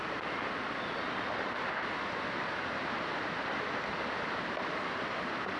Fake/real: real